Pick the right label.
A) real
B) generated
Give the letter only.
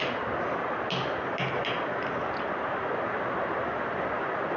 A